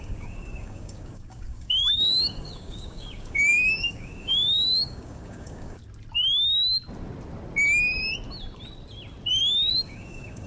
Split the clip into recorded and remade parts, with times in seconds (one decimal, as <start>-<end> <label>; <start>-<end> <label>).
0.0-5.8 remade; 5.8-9.7 recorded; 9.7-10.5 remade